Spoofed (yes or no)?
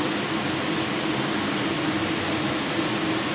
no